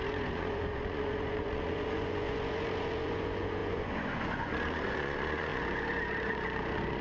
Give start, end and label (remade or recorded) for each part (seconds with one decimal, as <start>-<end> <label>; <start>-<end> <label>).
0.0-7.0 remade